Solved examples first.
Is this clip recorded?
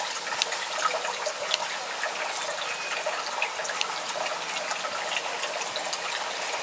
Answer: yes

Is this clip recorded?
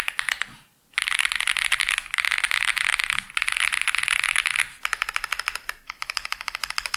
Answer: yes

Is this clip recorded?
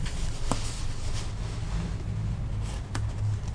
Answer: yes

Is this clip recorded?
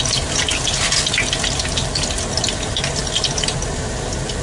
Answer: yes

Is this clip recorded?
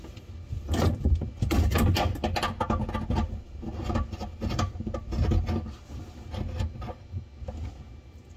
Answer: yes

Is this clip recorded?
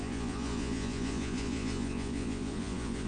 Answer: no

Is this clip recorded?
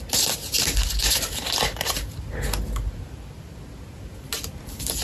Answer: yes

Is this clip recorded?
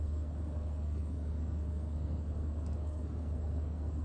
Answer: no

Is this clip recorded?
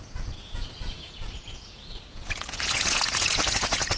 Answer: no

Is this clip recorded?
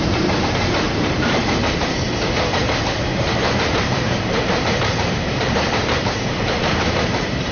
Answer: no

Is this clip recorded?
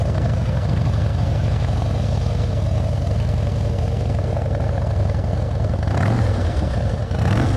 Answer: no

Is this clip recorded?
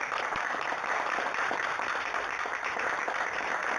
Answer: no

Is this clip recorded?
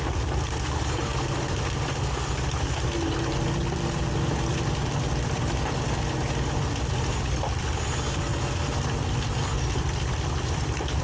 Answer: yes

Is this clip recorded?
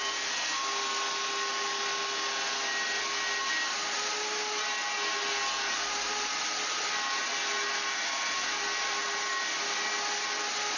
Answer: yes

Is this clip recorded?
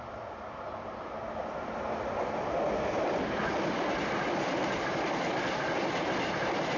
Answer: yes